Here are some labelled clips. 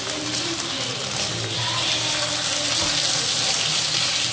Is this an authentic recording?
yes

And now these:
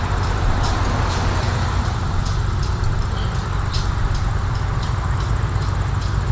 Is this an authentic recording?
yes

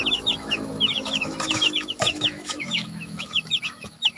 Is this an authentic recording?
no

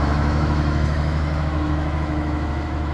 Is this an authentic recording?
no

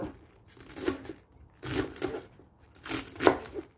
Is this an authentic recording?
yes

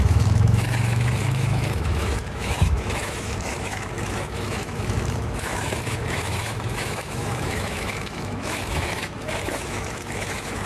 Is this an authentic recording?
no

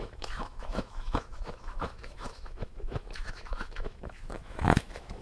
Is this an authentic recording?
no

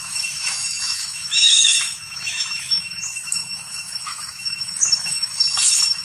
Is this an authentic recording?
no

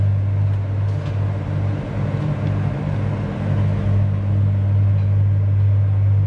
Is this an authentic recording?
yes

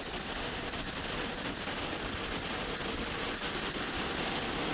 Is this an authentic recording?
yes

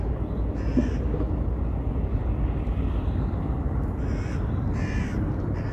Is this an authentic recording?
yes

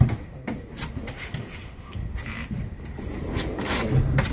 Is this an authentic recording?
yes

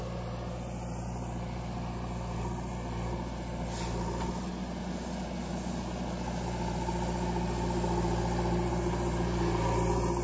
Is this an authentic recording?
yes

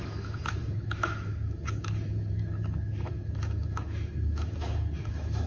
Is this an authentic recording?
no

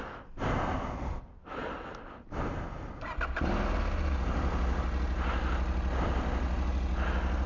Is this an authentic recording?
yes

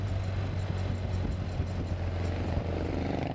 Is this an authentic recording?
yes